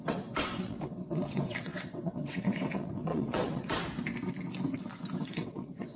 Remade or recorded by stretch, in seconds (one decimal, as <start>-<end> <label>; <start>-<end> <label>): 0.0-3.8 remade; 3.8-5.2 recorded; 5.2-6.0 remade